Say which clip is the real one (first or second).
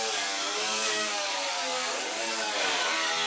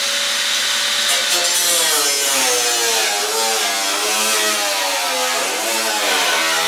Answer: second